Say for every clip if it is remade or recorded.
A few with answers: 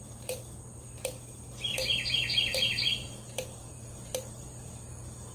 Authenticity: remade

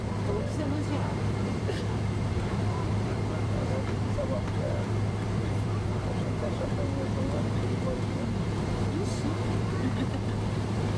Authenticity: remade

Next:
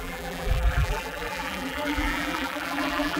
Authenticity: remade